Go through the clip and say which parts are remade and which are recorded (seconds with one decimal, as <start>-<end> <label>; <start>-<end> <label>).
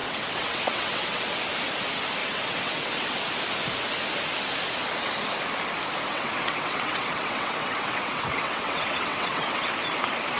0.0-1.4 remade; 1.4-2.2 recorded; 2.2-3.2 remade; 3.2-6.1 recorded; 6.1-9.7 remade; 9.7-10.4 recorded